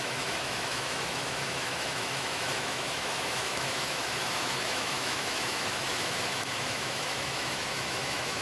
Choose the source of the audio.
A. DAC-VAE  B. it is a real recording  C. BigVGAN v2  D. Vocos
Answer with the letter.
A